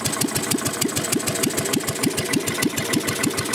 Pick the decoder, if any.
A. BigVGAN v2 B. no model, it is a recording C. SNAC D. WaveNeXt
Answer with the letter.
B